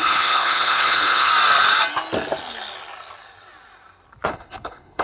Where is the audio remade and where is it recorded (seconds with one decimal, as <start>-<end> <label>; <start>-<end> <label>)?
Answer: 0.0-1.3 remade; 1.3-4.3 recorded; 4.3-5.0 remade